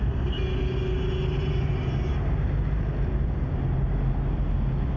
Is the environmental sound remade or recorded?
recorded